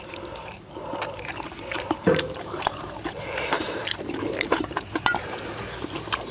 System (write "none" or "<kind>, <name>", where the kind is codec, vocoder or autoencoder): vocoder, BigVGAN v2